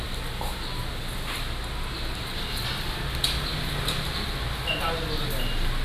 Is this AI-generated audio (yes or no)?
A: no